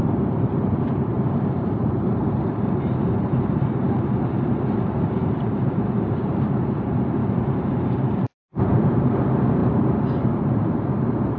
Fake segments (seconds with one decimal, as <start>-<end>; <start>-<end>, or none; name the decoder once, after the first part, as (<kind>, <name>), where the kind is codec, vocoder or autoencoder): 0.0-11.4 (vocoder, BigVGAN v2)